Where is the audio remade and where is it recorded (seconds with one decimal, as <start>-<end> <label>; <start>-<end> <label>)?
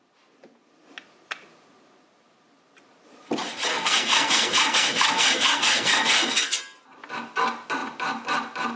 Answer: 0.0-3.7 recorded; 3.7-6.6 remade; 6.6-8.8 recorded